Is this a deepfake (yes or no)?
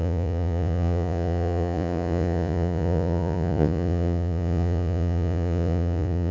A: yes